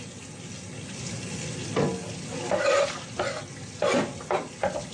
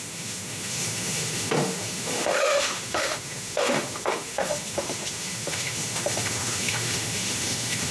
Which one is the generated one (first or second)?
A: second